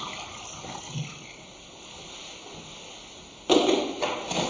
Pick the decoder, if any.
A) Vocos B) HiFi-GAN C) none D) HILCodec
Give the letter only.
C